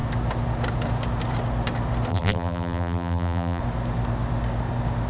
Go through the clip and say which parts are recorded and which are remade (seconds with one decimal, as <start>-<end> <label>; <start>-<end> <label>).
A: 0.0-2.1 recorded; 2.1-3.6 remade; 3.6-5.1 recorded